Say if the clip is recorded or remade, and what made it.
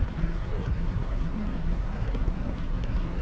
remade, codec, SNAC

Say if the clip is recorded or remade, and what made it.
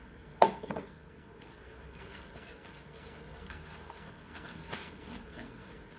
remade, codec, SNAC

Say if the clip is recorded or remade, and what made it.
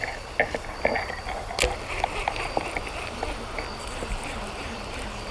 recorded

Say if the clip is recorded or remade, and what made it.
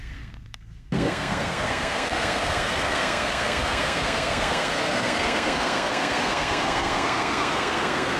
remade, codec, SNAC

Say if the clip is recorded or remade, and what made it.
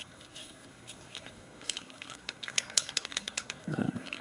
remade, codec, SNAC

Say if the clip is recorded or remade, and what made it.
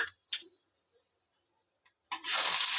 recorded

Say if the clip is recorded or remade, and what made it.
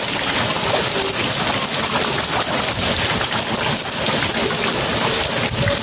recorded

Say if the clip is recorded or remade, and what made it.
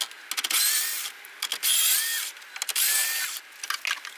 recorded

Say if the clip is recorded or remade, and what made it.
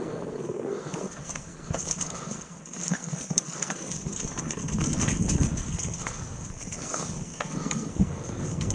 remade, codec, SNAC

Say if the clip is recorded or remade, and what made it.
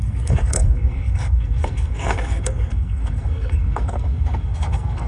remade, codec, SNAC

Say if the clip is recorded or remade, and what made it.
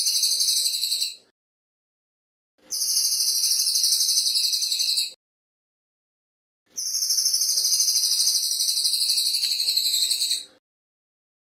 recorded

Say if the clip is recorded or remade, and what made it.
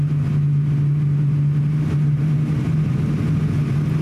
recorded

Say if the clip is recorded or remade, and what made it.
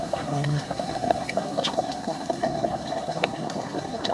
remade, codec, SNAC